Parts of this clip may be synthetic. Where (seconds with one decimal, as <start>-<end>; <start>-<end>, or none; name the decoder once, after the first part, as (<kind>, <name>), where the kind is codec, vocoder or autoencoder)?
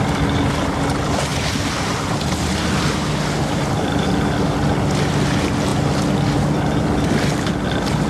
none